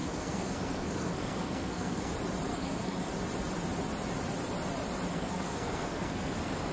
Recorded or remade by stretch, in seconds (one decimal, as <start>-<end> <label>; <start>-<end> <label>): 0.0-2.1 remade; 2.1-2.5 recorded; 2.5-3.1 remade; 3.1-5.1 recorded; 5.1-6.7 remade